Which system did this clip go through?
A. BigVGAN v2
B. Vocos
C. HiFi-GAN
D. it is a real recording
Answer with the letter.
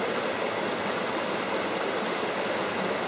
D